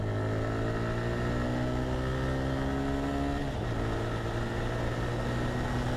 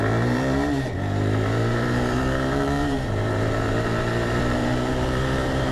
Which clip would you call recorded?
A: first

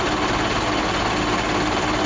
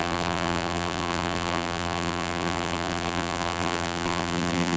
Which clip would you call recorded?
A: first